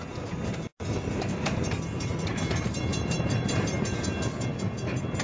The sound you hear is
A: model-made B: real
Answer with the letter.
B